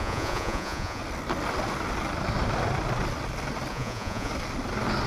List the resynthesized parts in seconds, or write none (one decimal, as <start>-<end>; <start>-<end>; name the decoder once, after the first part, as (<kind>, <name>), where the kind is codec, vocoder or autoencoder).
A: 0.0-1.0 (vocoder, Vocos); 3.7-4.3